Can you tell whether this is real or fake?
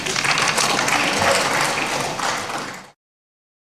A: real